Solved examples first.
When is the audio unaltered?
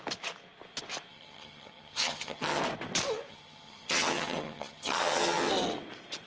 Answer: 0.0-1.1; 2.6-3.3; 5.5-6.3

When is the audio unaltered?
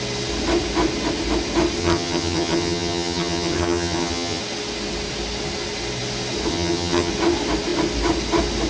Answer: 0.0-1.8; 4.4-6.5; 7.1-8.7